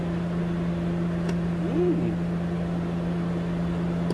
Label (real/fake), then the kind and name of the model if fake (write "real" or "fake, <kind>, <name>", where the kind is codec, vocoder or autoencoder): real